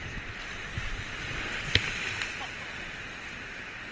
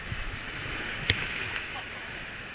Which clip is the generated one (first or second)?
second